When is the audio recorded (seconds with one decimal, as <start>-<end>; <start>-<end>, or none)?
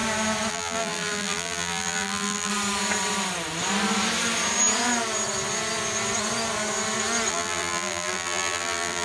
0.0-0.5; 2.5-7.3